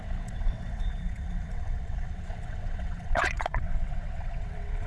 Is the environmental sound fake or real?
fake